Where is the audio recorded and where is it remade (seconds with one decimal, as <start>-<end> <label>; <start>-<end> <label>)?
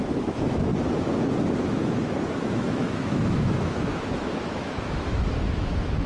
0.0-0.7 remade; 0.7-1.6 recorded; 1.6-6.1 remade